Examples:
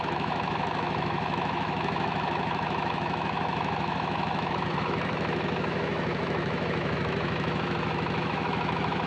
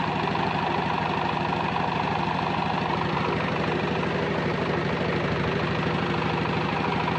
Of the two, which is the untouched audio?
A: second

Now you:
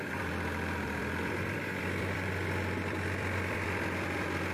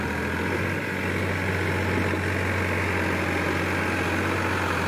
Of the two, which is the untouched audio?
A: second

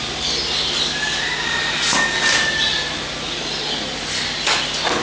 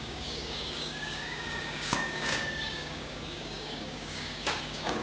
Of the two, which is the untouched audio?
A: first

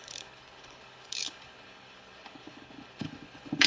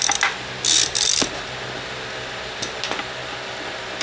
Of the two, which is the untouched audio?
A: second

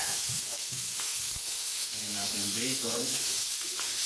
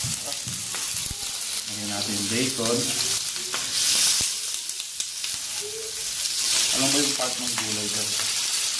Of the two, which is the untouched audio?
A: second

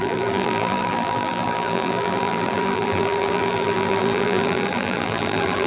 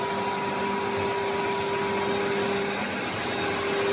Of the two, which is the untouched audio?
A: second